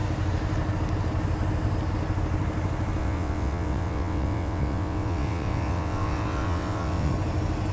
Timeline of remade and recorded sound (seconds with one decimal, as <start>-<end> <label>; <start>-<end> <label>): 0.0-3.0 recorded; 3.0-7.1 remade; 7.1-7.7 recorded